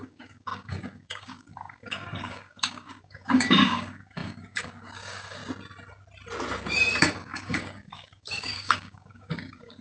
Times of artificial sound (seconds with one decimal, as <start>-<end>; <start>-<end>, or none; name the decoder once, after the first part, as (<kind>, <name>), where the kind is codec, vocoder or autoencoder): 0.0-5.4 (codec, DAC); 7.0-9.8